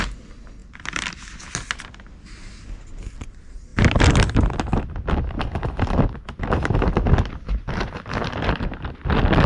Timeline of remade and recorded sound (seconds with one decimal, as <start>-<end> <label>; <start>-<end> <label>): 0.0-9.5 recorded